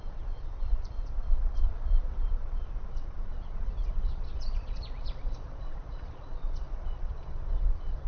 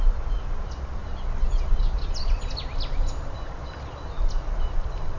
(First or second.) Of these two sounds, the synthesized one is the first